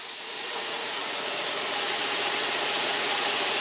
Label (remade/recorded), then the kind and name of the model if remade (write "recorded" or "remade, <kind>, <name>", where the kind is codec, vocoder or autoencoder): remade, vocoder, Vocos